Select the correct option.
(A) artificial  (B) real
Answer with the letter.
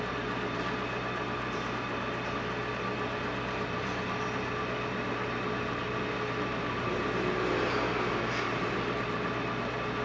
B